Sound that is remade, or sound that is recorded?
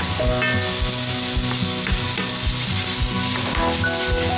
recorded